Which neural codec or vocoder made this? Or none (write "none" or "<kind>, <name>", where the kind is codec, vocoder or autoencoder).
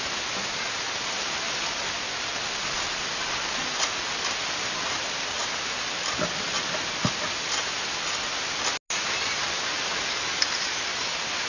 none